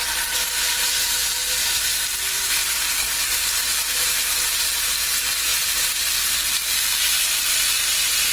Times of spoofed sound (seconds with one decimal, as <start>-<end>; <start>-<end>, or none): 1.6-2.5